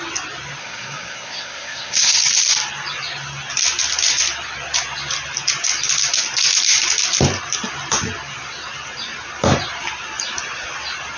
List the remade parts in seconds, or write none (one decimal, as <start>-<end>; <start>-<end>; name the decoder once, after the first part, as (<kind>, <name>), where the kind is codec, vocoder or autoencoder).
0.6-2.2 (codec, SNAC)